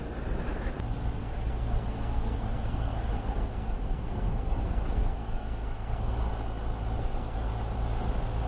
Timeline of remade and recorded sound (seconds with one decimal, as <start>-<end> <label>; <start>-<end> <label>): 0.0-1.2 recorded; 1.2-6.2 remade; 6.2-7.0 recorded; 7.0-7.5 remade; 7.5-8.5 recorded